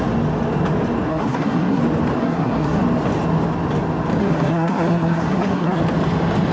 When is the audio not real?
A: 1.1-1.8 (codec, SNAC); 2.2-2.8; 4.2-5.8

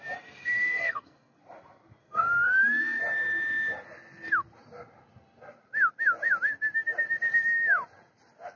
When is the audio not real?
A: 0.4-1.4 (codec, SNAC); 2.0-3.0

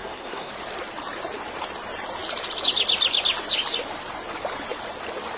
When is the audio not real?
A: 0.0-0.5 (codec, SNAC)

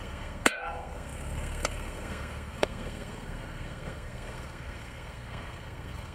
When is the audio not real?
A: 0.0-6.1 (codec, SNAC)

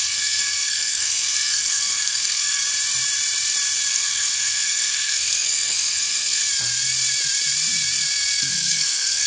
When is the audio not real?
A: 0.0-2.6 (codec, SNAC); 3.9-6.4; 8.4-9.3